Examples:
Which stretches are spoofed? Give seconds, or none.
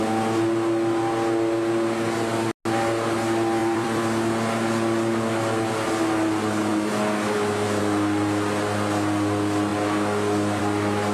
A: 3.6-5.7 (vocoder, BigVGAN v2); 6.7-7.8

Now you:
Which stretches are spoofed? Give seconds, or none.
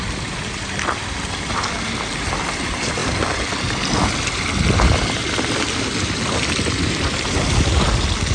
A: none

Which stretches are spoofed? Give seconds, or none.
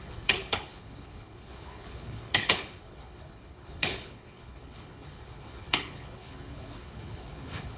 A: 0.0-7.8 (codec, HILCodec)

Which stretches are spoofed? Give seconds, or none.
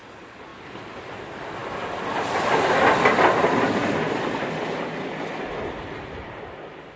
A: 0.5-1.2 (vocoder, BigVGAN v2)